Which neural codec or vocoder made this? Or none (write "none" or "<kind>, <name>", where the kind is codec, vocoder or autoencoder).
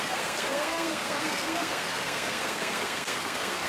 codec, SNAC